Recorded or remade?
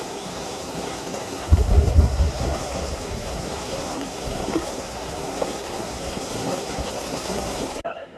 remade